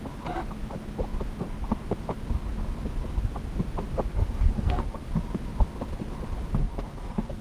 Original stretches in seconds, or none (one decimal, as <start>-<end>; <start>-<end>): 0.0-4.1; 5.1-6.6